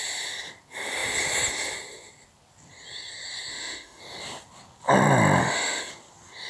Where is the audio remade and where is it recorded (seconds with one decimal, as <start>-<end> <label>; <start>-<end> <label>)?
0.0-3.5 recorded; 3.5-4.0 remade; 4.0-5.4 recorded; 5.4-5.9 remade; 5.9-6.5 recorded